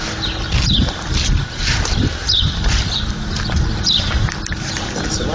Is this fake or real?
real